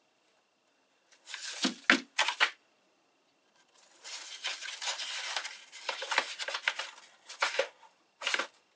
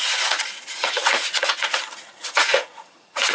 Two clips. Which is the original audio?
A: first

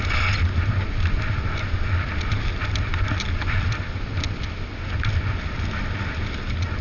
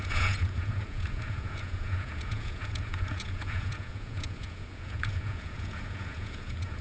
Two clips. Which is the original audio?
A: first